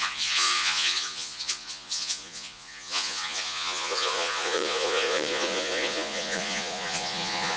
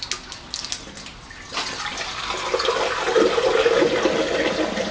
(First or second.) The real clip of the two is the second